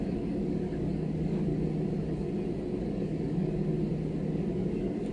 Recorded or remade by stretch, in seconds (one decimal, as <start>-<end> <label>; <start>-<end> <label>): 0.0-1.5 remade; 1.5-2.8 recorded; 2.8-3.7 remade; 3.7-4.3 recorded; 4.3-5.1 remade